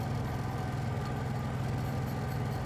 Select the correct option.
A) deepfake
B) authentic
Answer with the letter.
B